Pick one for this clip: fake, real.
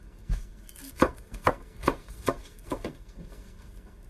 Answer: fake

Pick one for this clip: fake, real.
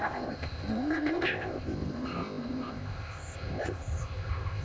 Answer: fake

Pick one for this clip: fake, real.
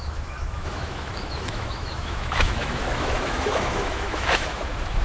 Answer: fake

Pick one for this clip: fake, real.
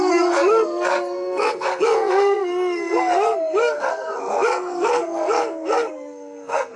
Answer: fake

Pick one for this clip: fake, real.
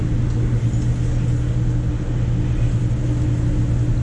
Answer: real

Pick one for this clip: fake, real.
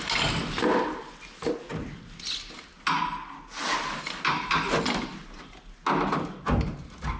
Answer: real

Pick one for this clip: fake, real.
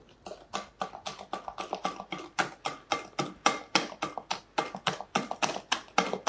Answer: real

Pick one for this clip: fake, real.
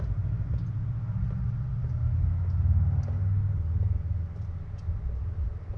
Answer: real